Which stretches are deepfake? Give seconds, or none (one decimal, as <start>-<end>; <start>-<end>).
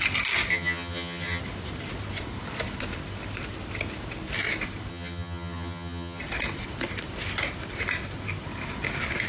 0.5-1.4; 4.9-6.2